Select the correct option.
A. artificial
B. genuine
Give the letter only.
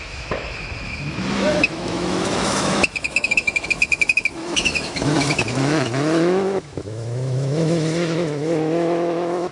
A